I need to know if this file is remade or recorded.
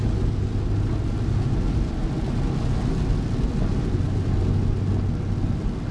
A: recorded